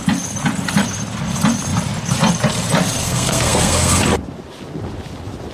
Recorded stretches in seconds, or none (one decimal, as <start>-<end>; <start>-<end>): 0.0-3.0; 4.0-5.5

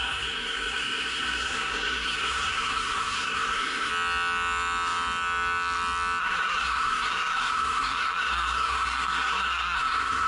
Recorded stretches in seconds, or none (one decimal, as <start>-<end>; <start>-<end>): 3.9-6.2

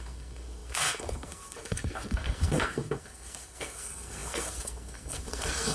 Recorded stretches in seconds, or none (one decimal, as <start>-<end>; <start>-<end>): none

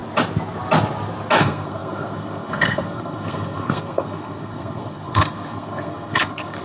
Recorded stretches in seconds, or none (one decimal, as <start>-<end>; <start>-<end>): 0.0-1.4

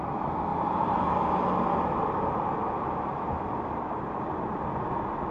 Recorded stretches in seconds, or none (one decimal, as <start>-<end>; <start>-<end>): 0.0-5.3

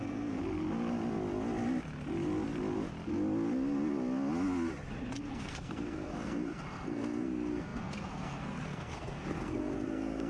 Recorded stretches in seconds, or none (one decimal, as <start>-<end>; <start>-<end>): 0.4-5.2

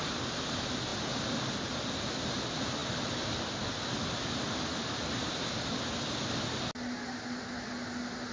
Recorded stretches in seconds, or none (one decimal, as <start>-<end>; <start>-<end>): 0.0-8.3